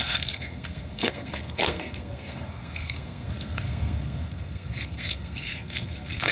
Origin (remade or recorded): remade